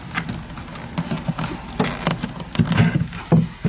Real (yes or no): yes